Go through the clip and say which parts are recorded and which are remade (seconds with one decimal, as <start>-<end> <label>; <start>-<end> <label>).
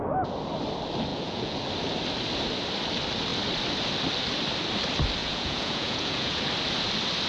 0.0-1.1 recorded; 1.1-1.6 remade; 1.6-5.2 recorded; 5.2-6.5 remade; 6.5-7.3 recorded